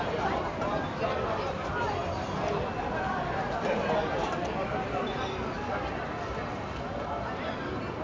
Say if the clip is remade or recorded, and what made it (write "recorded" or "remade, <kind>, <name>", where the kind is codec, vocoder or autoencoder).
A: recorded